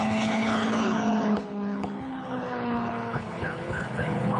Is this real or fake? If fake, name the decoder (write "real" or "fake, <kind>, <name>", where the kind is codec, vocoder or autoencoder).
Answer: fake, codec, HILCodec